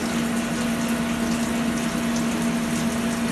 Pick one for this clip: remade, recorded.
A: recorded